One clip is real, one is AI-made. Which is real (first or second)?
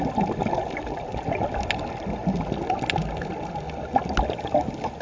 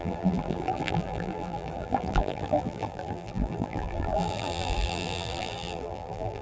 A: first